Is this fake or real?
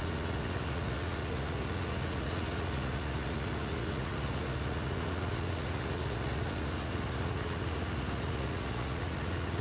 fake